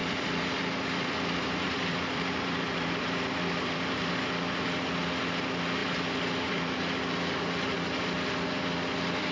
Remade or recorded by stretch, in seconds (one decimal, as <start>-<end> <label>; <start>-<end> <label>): 0.0-4.1 remade; 4.1-5.8 recorded; 5.8-6.8 remade; 6.8-9.3 recorded